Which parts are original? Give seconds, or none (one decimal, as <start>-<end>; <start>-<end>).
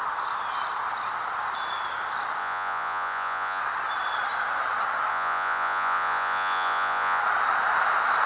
0.0-2.4; 3.6-5.1; 7.2-8.3